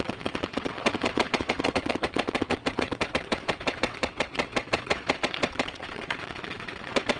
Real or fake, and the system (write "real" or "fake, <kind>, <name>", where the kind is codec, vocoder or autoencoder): fake, vocoder, WaveNeXt